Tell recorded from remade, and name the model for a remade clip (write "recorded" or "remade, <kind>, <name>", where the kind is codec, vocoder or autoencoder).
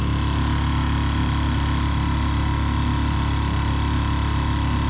recorded